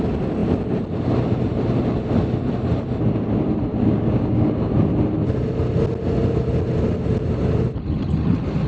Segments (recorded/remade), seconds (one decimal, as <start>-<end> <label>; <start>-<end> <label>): 0.0-3.7 recorded; 3.7-4.7 remade; 4.7-8.7 recorded